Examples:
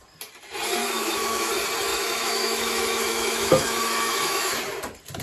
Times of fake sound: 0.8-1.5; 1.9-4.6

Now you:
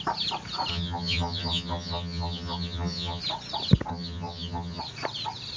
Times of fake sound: 0.7-3.2; 3.9-4.8